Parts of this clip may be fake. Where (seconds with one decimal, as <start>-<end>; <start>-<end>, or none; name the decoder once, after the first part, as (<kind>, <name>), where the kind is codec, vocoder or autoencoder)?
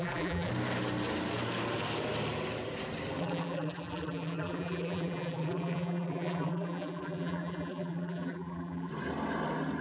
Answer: 0.0-0.5 (vocoder, BigVGAN v2); 3.2-8.9